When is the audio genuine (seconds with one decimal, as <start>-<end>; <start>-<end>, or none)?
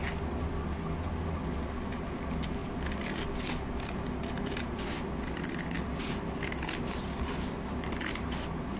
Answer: 0.0-8.8